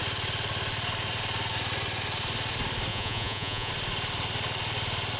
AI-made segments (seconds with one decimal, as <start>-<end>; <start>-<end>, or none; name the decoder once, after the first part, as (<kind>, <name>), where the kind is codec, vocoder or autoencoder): 2.9-3.7 (vocoder, Vocos)